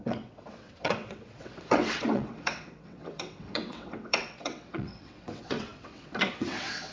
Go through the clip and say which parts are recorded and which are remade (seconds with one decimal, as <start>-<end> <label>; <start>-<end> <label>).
0.0-6.9 remade